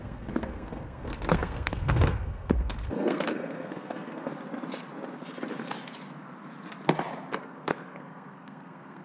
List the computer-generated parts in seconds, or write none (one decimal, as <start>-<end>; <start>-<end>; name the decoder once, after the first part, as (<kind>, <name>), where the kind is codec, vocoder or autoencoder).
0.0-4.3 (codec, SNAC); 7.4-9.0